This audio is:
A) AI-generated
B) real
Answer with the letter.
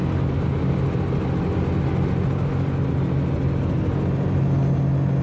B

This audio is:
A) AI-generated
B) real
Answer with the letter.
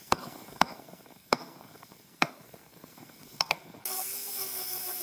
A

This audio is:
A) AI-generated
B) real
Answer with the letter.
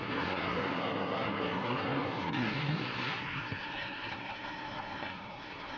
A